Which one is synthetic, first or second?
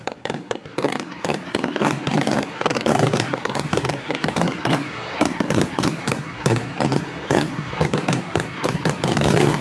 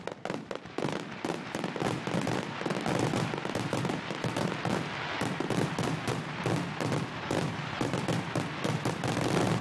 first